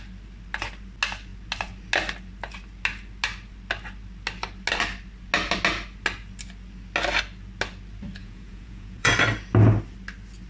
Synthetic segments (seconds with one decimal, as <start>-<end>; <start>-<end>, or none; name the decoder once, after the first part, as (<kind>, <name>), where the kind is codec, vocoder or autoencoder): 8.2-9.1 (vocoder, Vocos)